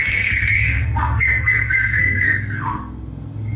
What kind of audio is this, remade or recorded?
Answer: remade